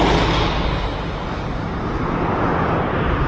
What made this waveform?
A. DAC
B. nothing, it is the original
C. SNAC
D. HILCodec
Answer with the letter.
B